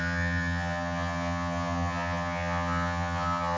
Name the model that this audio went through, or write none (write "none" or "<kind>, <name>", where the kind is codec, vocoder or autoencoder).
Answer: vocoder, HiFi-GAN